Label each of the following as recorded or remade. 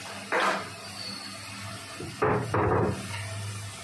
recorded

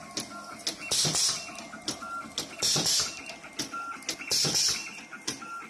recorded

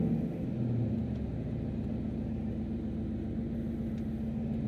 recorded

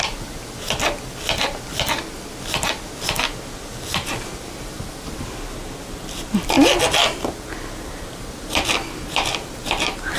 recorded